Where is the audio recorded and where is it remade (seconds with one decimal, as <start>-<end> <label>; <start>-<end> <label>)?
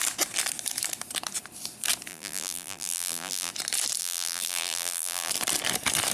0.0-2.1 recorded; 2.1-3.5 remade; 3.5-4.0 recorded; 4.0-5.3 remade; 5.3-6.1 recorded